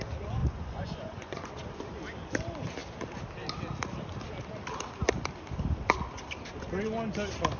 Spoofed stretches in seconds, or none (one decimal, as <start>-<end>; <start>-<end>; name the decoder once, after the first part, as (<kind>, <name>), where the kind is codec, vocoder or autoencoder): 0.4-1.5 (vocoder, Vocos)